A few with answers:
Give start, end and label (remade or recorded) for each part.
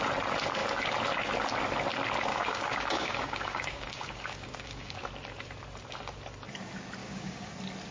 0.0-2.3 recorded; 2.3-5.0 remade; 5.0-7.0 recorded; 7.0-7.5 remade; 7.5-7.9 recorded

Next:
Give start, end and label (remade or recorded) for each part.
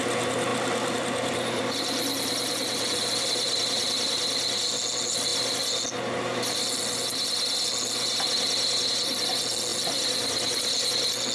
0.0-0.5 recorded; 0.5-1.6 remade; 1.6-9.7 recorded; 9.7-10.9 remade; 10.9-11.3 recorded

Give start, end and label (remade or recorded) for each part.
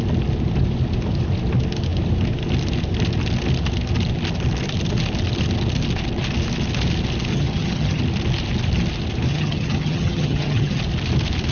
0.0-7.3 recorded; 7.3-8.0 remade; 8.0-9.3 recorded; 9.3-10.8 remade; 10.8-11.5 recorded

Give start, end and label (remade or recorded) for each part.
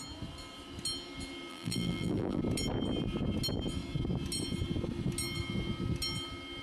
0.0-1.5 recorded; 1.5-2.4 remade; 2.4-6.6 recorded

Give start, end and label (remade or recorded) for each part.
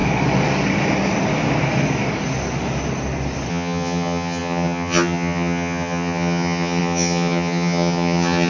0.0-3.5 recorded; 3.5-8.5 remade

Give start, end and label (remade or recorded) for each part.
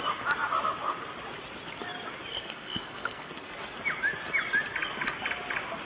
0.0-2.3 recorded; 2.3-3.5 remade; 3.5-5.9 recorded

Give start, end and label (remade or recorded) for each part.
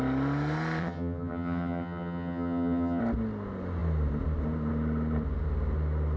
0.0-0.8 recorded; 0.8-3.0 remade; 3.0-6.2 recorded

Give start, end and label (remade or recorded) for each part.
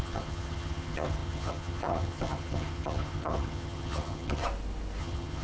0.0-4.4 remade; 4.4-5.0 recorded; 5.0-5.4 remade